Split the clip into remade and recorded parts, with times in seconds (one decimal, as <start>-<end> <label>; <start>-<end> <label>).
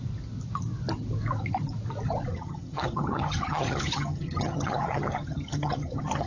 0.0-2.3 recorded; 2.3-6.3 remade